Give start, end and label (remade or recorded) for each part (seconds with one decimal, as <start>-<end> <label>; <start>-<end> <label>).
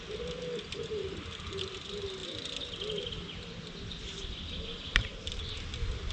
0.0-6.1 recorded